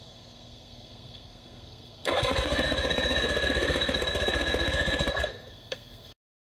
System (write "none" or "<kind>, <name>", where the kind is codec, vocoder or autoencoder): codec, SNAC